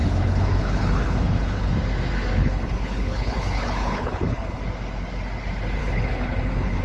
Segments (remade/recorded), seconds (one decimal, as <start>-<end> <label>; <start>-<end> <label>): 0.0-1.7 remade; 1.7-2.4 recorded; 2.4-4.6 remade; 4.6-5.8 recorded; 5.8-6.8 remade